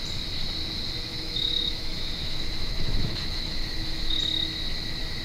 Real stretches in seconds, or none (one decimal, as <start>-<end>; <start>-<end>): 0.0-1.1; 4.2-5.2